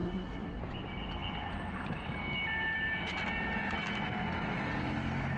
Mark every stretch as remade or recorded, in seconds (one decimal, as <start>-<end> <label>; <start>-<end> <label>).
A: 0.0-0.6 remade; 0.6-5.4 recorded